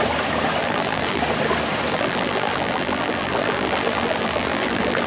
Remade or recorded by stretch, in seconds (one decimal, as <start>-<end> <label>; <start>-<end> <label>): 0.0-0.6 recorded; 0.6-1.2 remade; 1.2-1.9 recorded; 1.9-5.1 remade